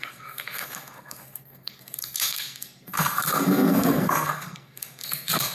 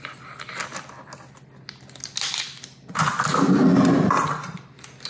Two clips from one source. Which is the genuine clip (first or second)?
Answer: second